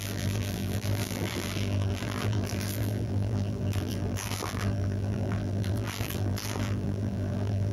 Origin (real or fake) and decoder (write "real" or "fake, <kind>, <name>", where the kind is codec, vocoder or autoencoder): fake, vocoder, BigVGAN v2